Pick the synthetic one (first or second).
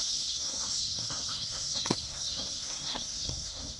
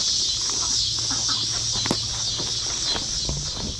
first